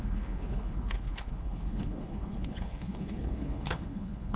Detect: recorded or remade remade